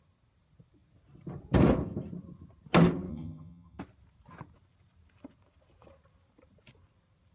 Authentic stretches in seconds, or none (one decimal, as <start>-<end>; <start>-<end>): 0.0-3.1; 3.8-7.3